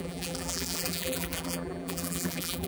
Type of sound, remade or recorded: remade